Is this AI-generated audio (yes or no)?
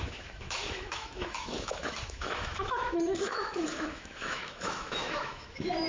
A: yes